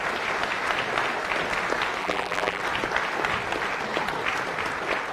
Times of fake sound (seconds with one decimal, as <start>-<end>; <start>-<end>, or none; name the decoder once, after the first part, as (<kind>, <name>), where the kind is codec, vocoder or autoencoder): 2.0-2.6 (vocoder, BigVGAN v2)